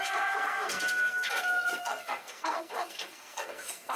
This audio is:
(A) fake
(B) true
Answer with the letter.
A